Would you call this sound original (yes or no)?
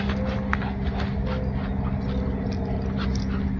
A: yes